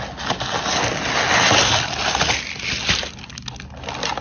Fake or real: real